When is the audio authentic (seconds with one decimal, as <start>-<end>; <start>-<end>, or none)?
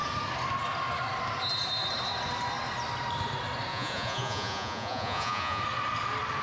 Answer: 0.0-3.7; 5.6-6.4